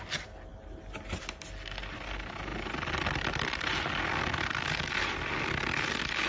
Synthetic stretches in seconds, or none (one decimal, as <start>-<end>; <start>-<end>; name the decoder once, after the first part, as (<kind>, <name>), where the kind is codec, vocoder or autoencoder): none